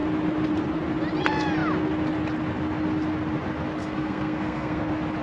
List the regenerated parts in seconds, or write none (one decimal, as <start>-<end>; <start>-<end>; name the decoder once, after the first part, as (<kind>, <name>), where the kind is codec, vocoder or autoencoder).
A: 3.8-4.8 (codec, SNAC)